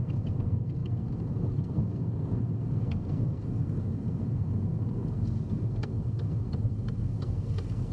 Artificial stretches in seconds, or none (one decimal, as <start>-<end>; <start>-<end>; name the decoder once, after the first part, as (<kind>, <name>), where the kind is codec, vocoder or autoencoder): 0.0-7.9 (codec, SNAC)